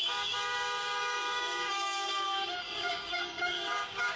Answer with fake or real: fake